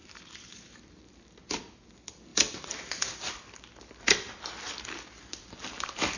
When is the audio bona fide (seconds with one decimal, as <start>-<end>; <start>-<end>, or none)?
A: 0.8-2.3; 3.3-6.2